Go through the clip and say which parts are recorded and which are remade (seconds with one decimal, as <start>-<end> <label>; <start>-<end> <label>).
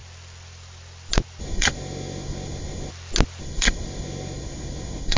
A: 0.0-1.4 recorded; 1.4-2.9 remade; 2.9-3.4 recorded; 3.4-5.2 remade